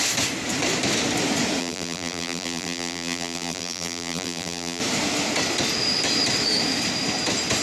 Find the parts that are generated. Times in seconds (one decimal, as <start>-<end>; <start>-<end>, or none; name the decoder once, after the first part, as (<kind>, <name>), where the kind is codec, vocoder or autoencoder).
1.6-4.8 (vocoder, BigVGAN v2)